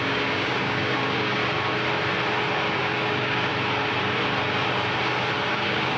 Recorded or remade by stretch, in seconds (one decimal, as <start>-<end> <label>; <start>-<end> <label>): 0.0-1.4 remade; 1.4-2.8 recorded; 2.8-3.5 remade; 3.5-5.5 recorded; 5.5-6.0 remade